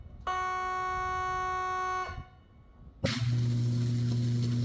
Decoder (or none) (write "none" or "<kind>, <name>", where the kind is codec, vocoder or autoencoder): none